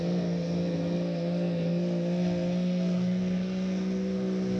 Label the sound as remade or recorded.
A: remade